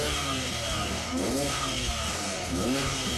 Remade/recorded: remade